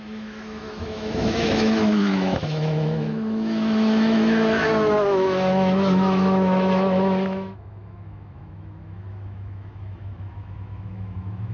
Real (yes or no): no